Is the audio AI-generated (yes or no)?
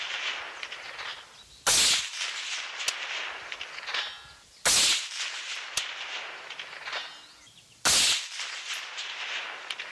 no